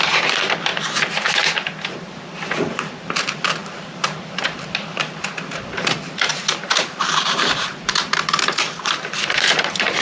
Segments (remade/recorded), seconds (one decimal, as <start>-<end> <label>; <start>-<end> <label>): 0.0-0.7 remade; 0.7-1.9 recorded; 1.9-10.0 remade